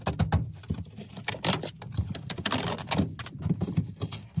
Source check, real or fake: real